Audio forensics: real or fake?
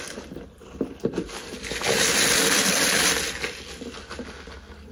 real